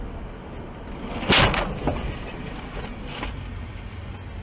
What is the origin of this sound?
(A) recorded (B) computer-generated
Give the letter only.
A